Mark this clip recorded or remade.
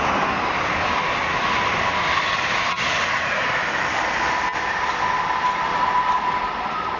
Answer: recorded